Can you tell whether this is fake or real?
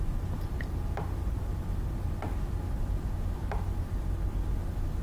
real